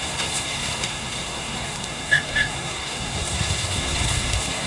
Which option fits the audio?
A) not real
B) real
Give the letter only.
A